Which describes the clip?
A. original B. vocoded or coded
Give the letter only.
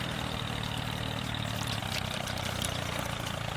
B